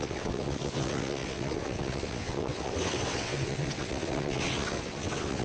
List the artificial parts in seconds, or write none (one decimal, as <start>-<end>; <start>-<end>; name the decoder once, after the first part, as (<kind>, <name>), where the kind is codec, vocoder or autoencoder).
0.0-5.4 (vocoder, WaveNeXt)